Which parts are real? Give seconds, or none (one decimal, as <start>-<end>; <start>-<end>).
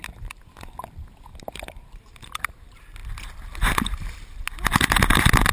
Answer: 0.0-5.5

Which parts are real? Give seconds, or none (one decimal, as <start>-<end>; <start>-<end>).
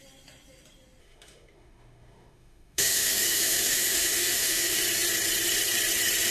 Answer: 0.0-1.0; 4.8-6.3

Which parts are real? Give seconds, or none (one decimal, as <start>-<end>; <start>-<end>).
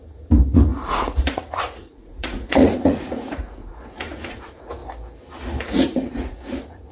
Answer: 4.8-5.6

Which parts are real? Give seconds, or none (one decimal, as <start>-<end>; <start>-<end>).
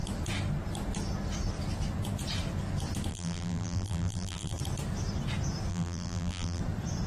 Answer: 0.0-3.1; 4.6-5.7; 6.6-7.1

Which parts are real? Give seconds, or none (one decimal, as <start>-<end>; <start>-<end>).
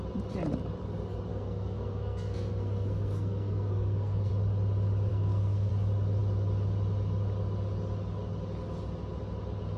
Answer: 0.0-1.3; 4.3-5.1; 5.7-9.8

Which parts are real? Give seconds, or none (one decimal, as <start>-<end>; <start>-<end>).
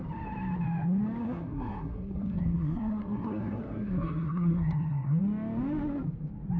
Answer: 0.0-1.2; 5.2-6.6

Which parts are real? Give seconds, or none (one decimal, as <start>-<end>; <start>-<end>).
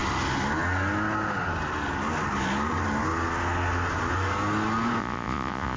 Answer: 0.0-5.0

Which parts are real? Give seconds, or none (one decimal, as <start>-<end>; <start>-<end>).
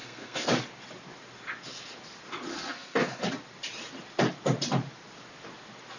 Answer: 0.5-2.5; 3.2-6.0